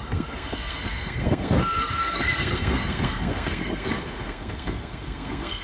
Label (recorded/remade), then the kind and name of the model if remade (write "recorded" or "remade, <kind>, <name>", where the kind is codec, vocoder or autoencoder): remade, codec, SNAC